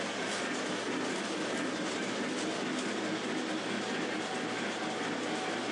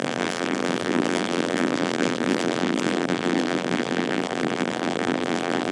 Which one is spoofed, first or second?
second